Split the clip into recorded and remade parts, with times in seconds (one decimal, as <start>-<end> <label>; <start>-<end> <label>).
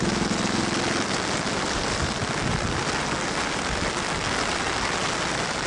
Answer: 0.0-5.7 recorded